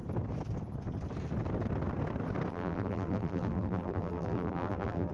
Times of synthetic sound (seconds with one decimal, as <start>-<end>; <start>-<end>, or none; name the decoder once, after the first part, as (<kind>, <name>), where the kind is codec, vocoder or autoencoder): 2.5-5.1 (vocoder, BigVGAN v2)